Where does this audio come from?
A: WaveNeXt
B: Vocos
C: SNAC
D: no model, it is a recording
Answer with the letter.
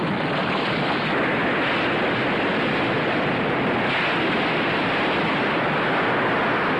D